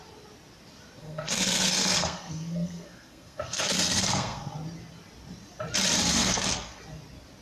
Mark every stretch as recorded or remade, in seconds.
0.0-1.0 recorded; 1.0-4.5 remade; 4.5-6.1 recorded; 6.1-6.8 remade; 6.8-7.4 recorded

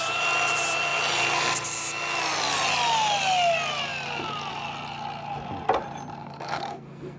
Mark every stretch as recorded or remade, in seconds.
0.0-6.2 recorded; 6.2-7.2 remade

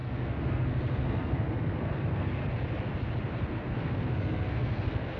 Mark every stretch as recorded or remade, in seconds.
0.0-2.4 remade; 2.4-3.3 recorded; 3.3-5.2 remade

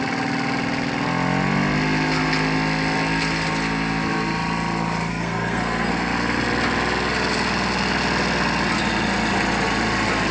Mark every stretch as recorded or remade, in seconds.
0.0-5.1 recorded; 5.1-5.9 remade; 5.9-10.3 recorded

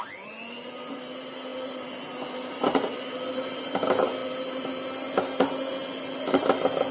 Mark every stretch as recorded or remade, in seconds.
0.0-6.9 recorded